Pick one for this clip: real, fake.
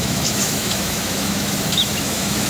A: fake